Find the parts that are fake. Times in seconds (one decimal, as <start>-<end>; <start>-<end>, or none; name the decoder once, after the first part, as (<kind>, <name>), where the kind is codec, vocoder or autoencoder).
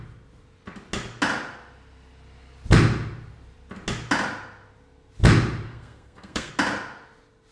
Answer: 5.7-6.5 (codec, SNAC)